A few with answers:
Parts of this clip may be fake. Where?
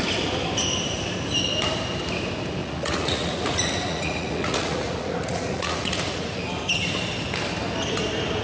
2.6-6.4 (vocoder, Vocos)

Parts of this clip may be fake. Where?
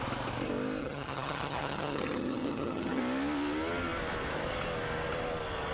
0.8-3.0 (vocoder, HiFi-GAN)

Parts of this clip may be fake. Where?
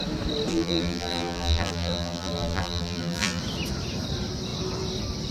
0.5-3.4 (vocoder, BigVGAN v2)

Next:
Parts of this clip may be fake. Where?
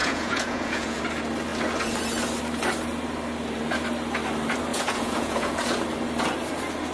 0.0-1.0 (vocoder, Vocos); 4.7-5.6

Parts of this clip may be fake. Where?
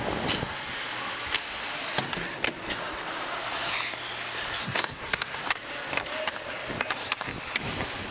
4.6-5.4 (codec, SNAC)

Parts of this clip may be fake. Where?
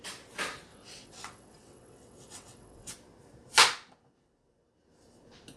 0.7-2.9 (vocoder, WaveNeXt)